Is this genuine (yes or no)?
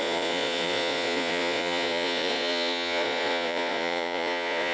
no